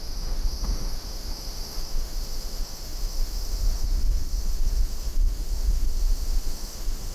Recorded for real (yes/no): no